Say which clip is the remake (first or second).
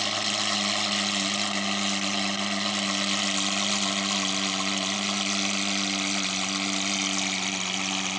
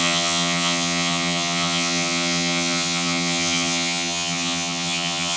second